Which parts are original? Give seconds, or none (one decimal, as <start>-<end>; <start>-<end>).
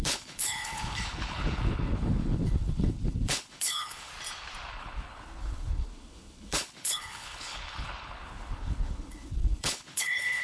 4.1-4.7